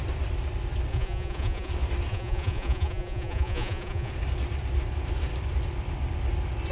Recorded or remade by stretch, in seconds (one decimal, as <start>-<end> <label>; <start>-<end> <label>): 0.0-0.9 recorded; 0.9-1.7 remade; 1.7-2.1 recorded; 2.1-4.1 remade; 4.1-6.7 recorded